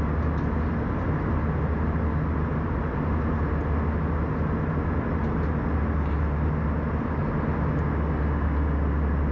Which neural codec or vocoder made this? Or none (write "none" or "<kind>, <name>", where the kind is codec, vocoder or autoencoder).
none